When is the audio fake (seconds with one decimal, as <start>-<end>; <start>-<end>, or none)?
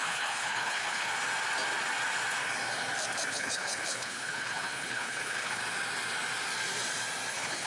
0.0-1.1; 3.3-5.6; 7.3-7.7